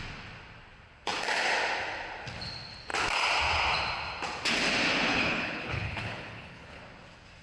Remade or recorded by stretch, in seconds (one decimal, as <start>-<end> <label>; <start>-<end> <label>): 0.0-5.1 recorded; 5.1-6.8 remade; 6.8-7.4 recorded